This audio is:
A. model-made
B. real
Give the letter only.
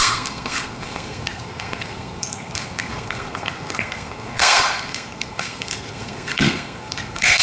A